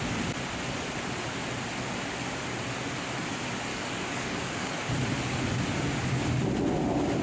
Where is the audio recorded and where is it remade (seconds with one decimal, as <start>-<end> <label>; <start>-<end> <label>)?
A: 0.0-3.7 recorded; 3.7-4.9 remade; 4.9-7.2 recorded